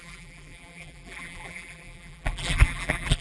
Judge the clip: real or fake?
fake